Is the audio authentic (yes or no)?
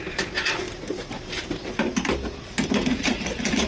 yes